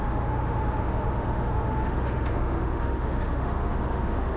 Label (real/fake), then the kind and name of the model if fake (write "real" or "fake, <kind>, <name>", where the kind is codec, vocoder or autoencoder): fake, autoencoder, DAC-VAE